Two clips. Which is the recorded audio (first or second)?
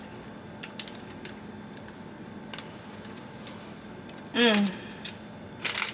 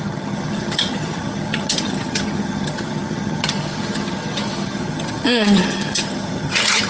first